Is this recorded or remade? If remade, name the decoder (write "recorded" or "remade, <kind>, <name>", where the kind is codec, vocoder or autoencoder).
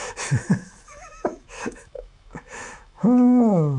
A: remade, autoencoder, DAC-VAE